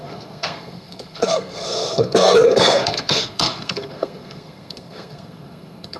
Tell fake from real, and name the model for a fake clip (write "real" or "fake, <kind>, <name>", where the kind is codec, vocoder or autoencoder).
fake, codec, SNAC